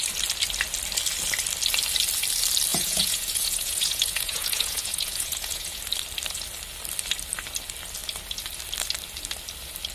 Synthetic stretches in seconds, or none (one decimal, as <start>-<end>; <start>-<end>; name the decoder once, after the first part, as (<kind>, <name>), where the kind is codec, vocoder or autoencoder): 2.7-5.8 (vocoder, Vocos)

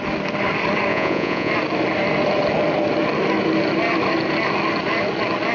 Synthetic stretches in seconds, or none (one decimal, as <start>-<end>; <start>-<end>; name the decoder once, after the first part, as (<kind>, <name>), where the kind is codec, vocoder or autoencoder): 0.9-1.5 (vocoder, Vocos)

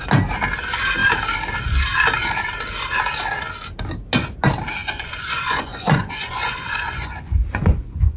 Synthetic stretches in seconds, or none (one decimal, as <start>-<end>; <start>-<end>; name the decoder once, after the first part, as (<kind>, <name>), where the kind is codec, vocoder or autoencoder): 4.8-8.2 (vocoder, Vocos)